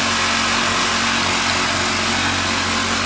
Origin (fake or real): real